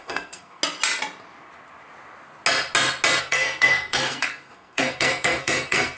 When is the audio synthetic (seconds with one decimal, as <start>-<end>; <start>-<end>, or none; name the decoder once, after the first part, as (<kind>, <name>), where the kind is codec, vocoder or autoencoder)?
0.0-0.6 (codec, SNAC); 3.2-6.0